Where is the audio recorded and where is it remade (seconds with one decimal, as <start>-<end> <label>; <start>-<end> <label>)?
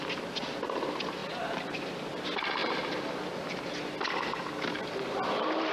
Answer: 0.0-1.2 recorded; 1.2-1.9 remade; 1.9-2.6 recorded; 2.6-3.7 remade; 3.7-5.7 recorded